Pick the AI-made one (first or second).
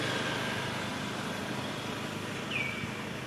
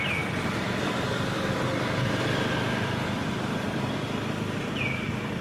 second